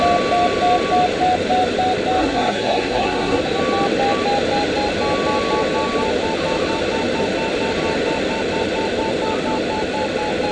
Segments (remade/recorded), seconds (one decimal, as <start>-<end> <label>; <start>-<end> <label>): 0.0-2.2 recorded; 2.2-3.4 remade; 3.4-10.5 recorded